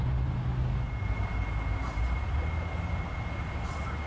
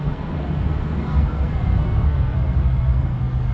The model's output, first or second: second